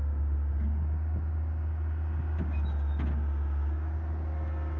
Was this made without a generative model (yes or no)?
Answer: yes